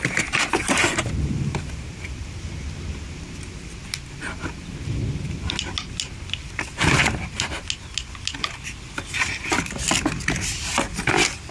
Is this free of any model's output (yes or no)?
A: yes